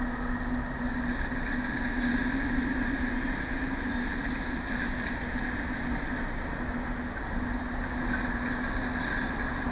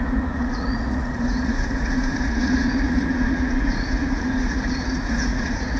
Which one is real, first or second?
first